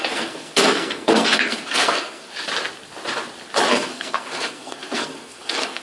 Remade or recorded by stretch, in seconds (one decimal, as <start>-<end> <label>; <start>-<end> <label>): 0.0-2.3 remade; 2.3-3.7 recorded; 3.7-5.8 remade